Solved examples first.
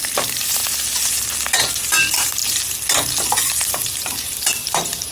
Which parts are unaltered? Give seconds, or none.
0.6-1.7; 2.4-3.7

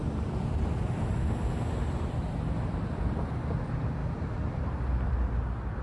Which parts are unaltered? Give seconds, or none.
0.0-4.0; 4.6-5.8

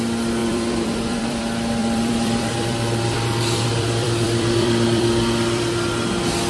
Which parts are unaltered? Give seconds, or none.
0.0-0.4; 1.4-1.8; 5.7-6.5

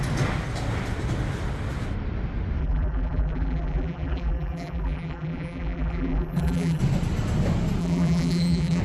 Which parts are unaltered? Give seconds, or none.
0.0-2.6; 6.8-7.8

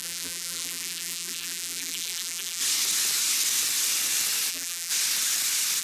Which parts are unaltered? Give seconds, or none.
2.6-4.5; 4.9-5.8